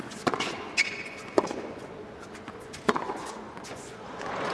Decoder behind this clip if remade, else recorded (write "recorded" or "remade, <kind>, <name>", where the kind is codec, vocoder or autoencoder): remade, vocoder, Vocos